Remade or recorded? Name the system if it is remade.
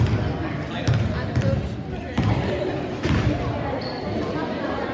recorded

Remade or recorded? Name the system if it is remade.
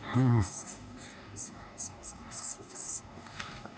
remade, codec, DAC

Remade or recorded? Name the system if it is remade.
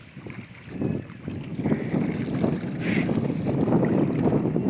recorded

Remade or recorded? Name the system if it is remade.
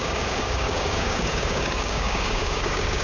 remade, codec, DAC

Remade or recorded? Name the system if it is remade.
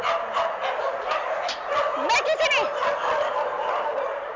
recorded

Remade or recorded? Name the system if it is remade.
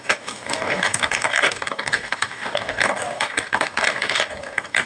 remade, codec, DAC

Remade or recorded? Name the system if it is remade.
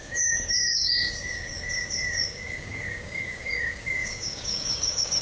remade, codec, DAC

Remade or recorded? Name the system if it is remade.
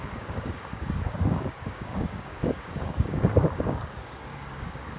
remade, codec, DAC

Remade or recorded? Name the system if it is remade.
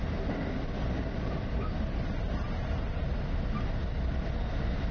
recorded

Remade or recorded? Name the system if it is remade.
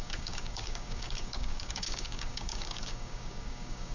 remade, codec, DAC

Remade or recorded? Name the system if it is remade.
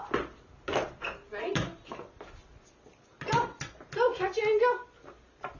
recorded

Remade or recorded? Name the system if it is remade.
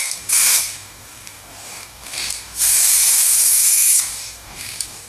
remade, codec, DAC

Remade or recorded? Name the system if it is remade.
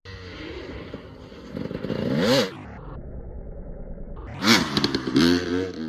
recorded